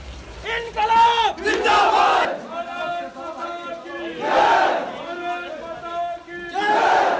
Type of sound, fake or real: real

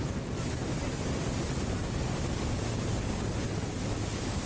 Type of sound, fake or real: real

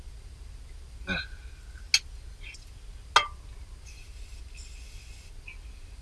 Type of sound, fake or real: real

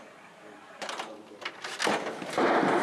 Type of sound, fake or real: real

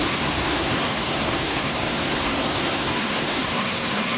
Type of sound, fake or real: fake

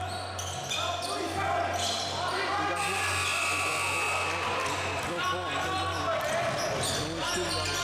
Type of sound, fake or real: real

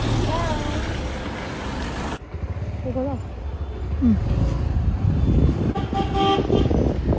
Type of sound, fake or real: real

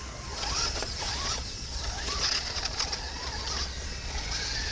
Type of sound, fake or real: fake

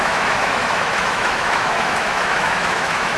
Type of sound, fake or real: fake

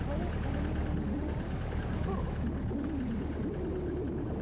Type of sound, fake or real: real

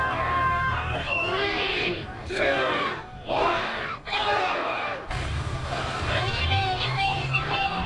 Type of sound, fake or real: fake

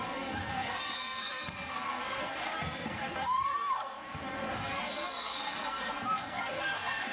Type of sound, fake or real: fake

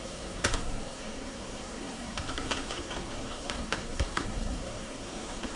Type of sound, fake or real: fake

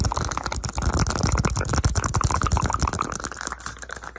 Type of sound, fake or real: real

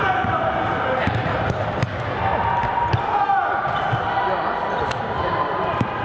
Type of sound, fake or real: real